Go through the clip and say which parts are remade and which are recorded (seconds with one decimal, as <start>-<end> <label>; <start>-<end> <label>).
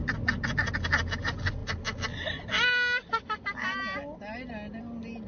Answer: 0.0-5.3 recorded